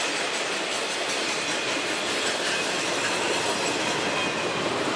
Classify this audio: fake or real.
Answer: real